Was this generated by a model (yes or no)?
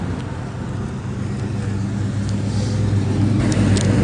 no